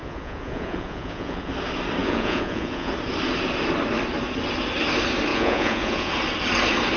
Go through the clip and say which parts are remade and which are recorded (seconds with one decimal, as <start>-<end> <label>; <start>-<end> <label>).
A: 0.0-1.5 remade; 1.5-2.0 recorded; 2.0-2.9 remade; 2.9-5.3 recorded; 5.3-6.1 remade; 6.1-7.0 recorded

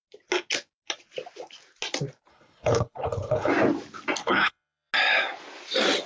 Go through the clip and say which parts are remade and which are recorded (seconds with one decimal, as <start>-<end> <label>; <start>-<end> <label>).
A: 0.0-2.3 recorded; 2.3-3.5 remade; 3.5-4.2 recorded; 4.2-4.9 remade; 4.9-6.1 recorded